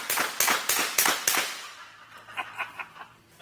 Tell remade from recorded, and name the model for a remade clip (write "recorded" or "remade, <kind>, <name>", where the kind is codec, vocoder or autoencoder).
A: recorded